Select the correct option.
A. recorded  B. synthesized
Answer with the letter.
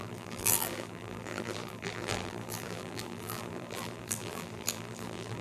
B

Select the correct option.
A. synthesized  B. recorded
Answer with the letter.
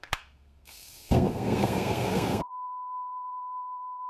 A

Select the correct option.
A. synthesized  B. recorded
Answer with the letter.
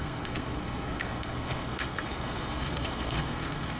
A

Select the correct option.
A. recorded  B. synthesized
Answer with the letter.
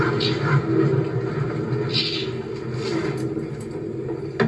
A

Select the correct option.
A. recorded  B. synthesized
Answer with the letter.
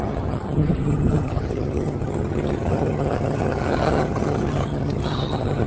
B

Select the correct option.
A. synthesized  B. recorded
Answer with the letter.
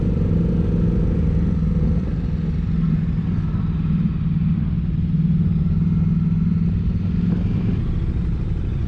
B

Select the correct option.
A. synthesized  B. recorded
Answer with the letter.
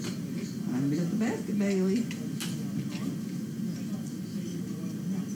B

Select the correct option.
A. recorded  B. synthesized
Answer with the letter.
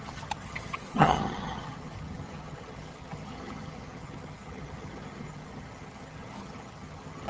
B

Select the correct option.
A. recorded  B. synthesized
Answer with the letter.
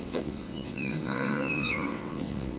B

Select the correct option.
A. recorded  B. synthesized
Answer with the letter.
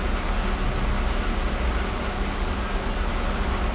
A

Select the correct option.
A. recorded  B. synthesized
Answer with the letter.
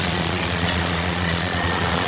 B